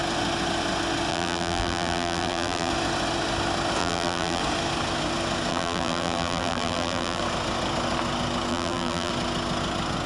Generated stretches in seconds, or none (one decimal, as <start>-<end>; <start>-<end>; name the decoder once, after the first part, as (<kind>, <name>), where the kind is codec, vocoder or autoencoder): 1.1-2.7 (vocoder, BigVGAN v2); 3.8-4.4; 5.5-7.2; 8.5-9.1

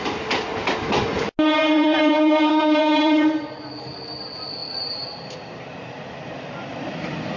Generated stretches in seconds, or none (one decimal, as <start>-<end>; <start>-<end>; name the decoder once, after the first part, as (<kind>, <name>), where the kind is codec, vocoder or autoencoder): 0.0-0.5 (vocoder, BigVGAN v2); 1.5-7.4